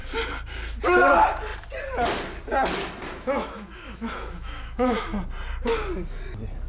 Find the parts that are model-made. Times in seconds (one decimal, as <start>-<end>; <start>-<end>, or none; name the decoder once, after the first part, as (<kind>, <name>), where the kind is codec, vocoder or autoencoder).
3.1-5.1 (autoencoder, DAC-VAE)